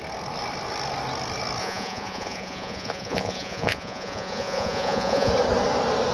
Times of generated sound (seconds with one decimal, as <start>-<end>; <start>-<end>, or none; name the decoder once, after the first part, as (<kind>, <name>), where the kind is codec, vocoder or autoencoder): 1.6-5.3 (vocoder, Vocos)